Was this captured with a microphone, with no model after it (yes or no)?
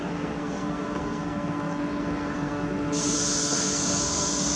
no